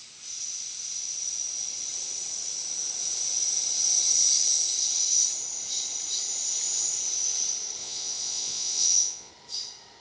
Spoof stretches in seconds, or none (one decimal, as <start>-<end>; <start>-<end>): 7.8-9.3